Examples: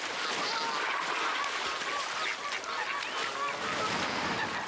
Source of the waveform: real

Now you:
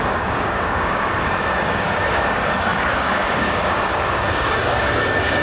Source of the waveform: fake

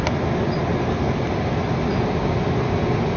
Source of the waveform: real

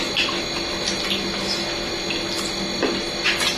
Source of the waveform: real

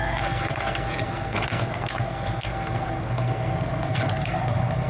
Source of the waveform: fake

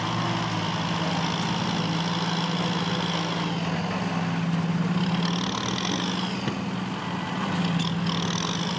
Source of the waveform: real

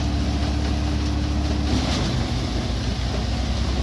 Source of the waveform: real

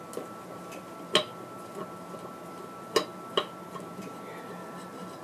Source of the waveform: real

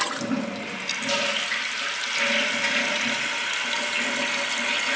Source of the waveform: real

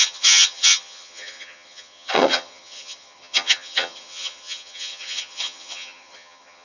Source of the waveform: fake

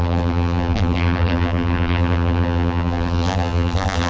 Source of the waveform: fake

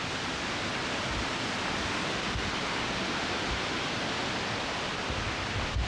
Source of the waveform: real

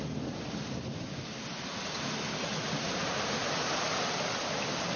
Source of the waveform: real